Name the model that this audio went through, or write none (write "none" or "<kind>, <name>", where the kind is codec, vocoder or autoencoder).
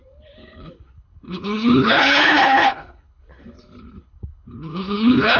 codec, HILCodec